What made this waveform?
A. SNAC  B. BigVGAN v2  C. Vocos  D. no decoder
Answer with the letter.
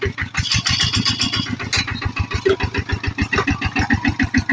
D